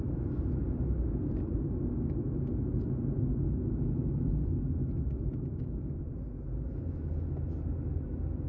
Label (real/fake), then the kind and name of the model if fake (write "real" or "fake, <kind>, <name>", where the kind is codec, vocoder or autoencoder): real